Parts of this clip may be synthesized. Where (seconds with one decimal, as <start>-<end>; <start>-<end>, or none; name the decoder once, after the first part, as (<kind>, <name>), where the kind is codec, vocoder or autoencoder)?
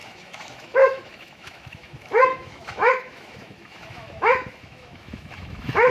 0.0-5.9 (autoencoder, DAC-VAE)